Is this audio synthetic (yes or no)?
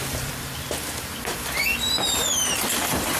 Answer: yes